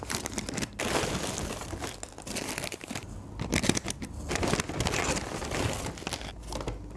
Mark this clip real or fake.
real